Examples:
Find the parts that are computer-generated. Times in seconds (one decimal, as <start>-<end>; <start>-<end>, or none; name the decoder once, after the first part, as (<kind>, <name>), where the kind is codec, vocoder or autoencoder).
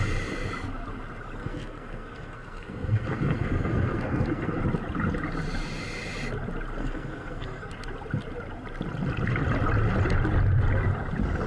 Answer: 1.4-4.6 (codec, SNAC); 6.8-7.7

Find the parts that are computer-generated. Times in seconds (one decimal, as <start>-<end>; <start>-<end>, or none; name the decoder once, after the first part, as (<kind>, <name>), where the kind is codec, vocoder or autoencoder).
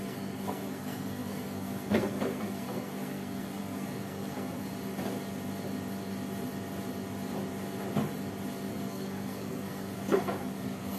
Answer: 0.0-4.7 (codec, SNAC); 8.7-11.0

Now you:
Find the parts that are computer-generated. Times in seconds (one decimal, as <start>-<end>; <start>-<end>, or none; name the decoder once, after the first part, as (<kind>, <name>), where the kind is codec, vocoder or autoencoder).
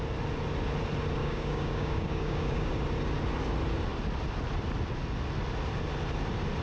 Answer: 1.2-2.7 (codec, DAC)